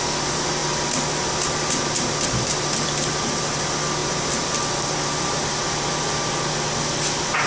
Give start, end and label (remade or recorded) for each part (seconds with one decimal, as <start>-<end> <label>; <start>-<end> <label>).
0.0-7.5 recorded